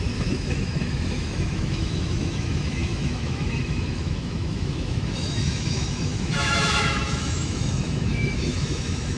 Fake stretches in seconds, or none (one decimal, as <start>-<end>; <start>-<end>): 0.0-9.2